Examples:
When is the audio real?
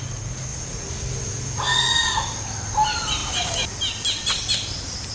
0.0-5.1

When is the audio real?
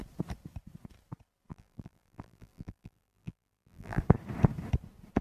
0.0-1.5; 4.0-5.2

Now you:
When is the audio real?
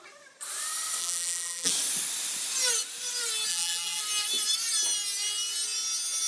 0.0-1.0; 1.7-3.5; 4.0-6.3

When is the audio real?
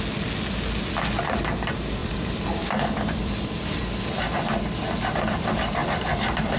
0.0-2.0; 4.6-5.8